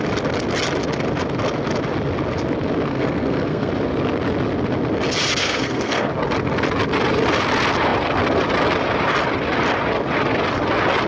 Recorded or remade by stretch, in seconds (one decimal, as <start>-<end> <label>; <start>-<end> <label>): 0.0-2.9 recorded; 2.9-3.7 remade; 3.7-5.4 recorded; 5.4-6.1 remade; 6.1-11.1 recorded

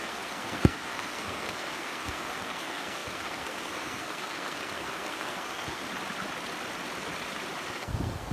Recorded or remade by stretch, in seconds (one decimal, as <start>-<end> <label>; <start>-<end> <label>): 0.0-5.8 remade; 5.8-7.7 recorded; 7.7-8.3 remade

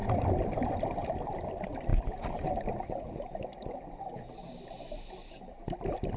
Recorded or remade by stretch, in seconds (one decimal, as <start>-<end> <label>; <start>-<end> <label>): 0.0-1.1 remade; 1.1-1.9 recorded; 1.9-3.0 remade; 3.0-3.5 recorded; 3.5-4.3 remade; 4.3-6.2 recorded

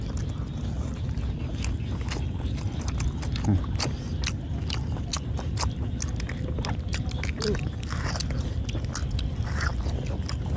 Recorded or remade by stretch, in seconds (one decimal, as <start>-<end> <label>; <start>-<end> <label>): 0.0-10.6 recorded

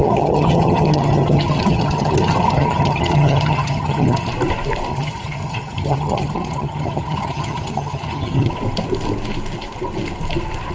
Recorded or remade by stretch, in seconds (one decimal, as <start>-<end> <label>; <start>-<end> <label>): 0.0-4.3 remade; 4.3-4.9 recorded; 4.9-8.5 remade; 8.5-10.7 recorded